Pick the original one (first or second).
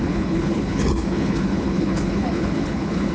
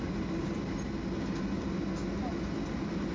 second